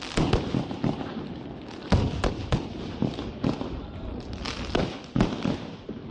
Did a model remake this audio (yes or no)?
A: no